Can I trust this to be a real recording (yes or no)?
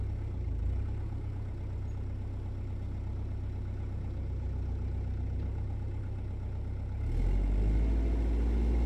yes